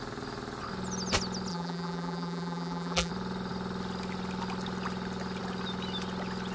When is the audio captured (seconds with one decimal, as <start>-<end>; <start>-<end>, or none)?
0.0-1.5; 3.1-6.5